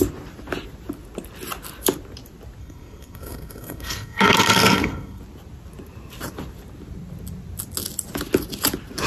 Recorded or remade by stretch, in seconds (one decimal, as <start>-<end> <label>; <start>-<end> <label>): 0.0-2.6 recorded; 2.6-5.2 remade; 5.2-9.1 recorded